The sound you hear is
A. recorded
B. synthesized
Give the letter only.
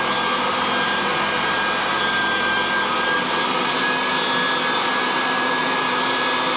A